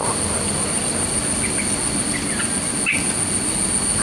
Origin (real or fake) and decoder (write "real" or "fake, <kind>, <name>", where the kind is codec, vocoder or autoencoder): real